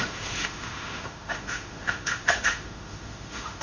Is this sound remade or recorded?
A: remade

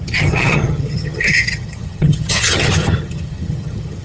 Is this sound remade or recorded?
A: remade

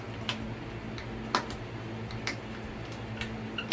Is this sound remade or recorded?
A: recorded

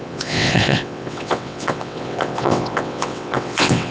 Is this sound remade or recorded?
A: remade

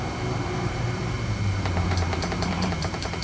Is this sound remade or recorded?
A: remade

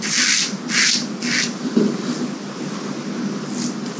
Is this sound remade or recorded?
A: recorded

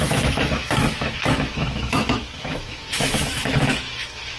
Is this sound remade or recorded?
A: remade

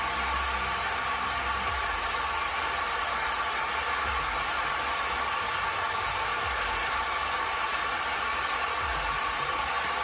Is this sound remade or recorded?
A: recorded